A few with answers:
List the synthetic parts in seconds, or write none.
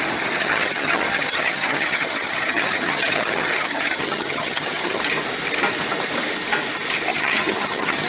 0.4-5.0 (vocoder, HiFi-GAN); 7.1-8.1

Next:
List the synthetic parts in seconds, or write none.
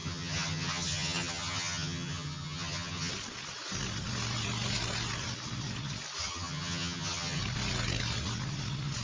0.0-3.1 (vocoder, HiFi-GAN); 6.2-7.4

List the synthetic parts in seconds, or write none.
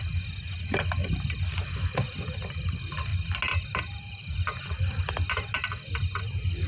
none